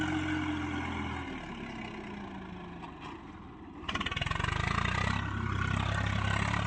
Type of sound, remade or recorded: recorded